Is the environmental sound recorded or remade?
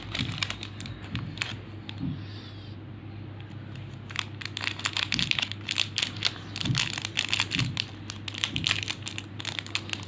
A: recorded